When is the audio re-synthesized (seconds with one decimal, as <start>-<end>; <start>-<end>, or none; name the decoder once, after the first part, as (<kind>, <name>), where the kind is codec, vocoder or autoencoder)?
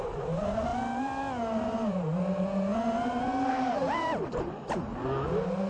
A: 0.0-0.7 (vocoder, BigVGAN v2); 1.7-5.7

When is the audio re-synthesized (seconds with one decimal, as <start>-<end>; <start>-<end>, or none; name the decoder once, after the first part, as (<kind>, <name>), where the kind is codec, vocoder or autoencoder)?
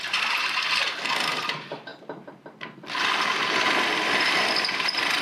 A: 0.0-0.4 (vocoder, BigVGAN v2); 1.1-1.9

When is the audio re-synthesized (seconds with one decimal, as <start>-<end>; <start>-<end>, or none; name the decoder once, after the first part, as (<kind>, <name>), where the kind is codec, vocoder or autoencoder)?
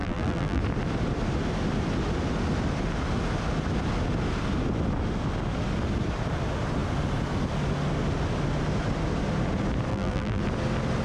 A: 0.0-0.6 (vocoder, BigVGAN v2); 9.9-10.4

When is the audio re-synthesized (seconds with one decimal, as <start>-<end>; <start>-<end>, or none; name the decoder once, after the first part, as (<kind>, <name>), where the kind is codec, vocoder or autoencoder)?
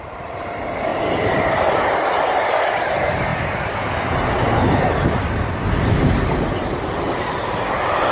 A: 0.0-0.9 (vocoder, BigVGAN v2); 2.7-3.3; 7.5-8.1